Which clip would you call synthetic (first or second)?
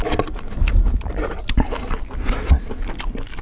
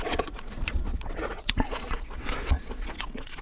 second